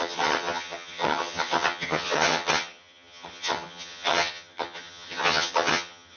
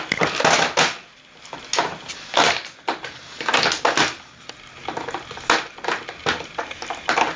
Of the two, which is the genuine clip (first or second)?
second